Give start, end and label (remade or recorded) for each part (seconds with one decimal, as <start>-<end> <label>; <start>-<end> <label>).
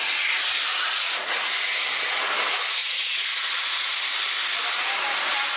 0.0-0.7 recorded; 0.7-1.3 remade; 1.3-2.8 recorded; 2.8-4.0 remade; 4.0-5.6 recorded